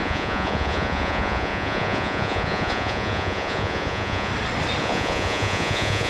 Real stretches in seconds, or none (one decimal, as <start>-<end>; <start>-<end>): 4.3-4.8